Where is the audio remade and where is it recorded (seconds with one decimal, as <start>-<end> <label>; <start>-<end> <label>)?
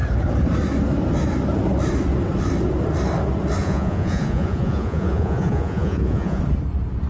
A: 0.0-3.6 recorded; 3.6-6.4 remade; 6.4-7.1 recorded